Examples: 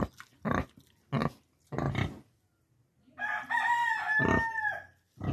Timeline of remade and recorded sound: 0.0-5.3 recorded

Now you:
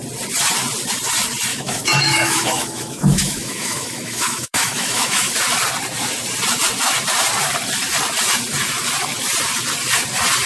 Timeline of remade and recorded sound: 0.0-1.5 recorded; 1.5-5.3 remade; 5.3-10.5 recorded